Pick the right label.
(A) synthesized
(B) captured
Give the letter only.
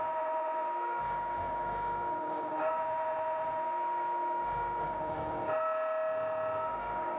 A